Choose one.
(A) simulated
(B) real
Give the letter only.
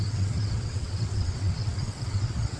A